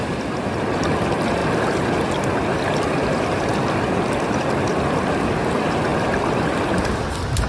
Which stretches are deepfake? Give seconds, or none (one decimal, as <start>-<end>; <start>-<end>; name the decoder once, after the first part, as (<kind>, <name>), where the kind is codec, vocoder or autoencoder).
none